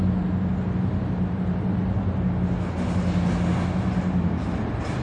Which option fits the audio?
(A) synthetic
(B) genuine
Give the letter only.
B